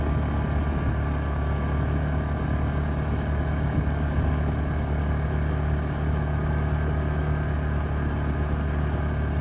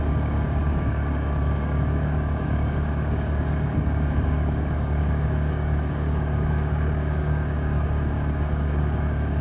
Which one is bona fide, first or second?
first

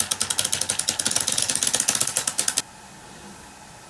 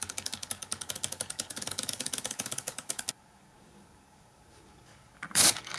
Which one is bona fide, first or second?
first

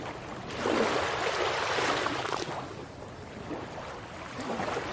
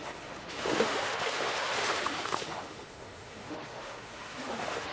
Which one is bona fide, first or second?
first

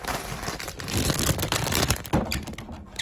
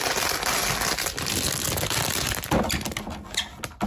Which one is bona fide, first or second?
second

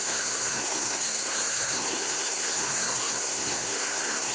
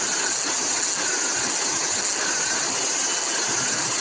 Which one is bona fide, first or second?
second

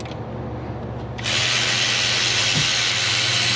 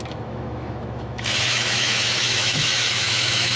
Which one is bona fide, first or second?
first